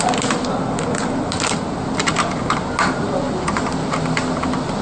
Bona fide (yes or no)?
yes